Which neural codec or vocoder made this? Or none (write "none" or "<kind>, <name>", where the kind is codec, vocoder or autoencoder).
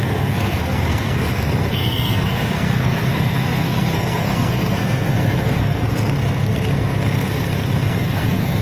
codec, SNAC